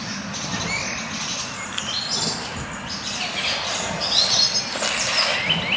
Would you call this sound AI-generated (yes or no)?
no